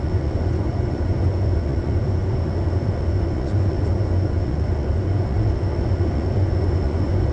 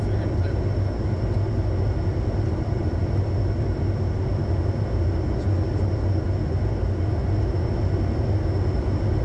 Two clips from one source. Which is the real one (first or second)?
second